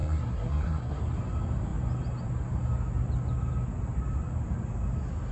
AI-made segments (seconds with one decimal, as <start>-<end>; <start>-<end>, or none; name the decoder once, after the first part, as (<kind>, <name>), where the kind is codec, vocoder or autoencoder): 0.0-1.0 (codec, SNAC)